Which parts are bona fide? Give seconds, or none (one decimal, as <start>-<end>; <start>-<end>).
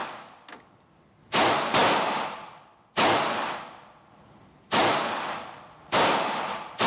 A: 0.0-6.9